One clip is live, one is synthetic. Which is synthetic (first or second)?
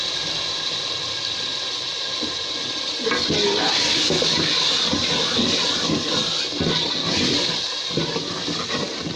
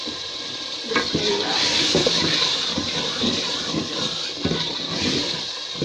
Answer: second